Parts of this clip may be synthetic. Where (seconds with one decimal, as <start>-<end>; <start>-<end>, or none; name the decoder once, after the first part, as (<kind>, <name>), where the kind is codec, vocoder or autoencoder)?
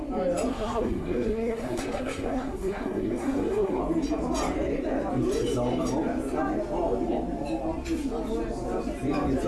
0.5-3.8 (codec, SNAC)